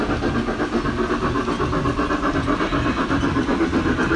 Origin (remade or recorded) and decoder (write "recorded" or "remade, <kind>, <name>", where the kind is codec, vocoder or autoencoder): recorded